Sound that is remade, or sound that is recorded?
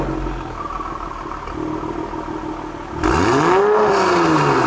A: recorded